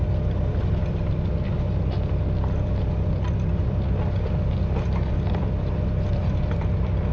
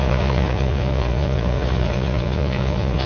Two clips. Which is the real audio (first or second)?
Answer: first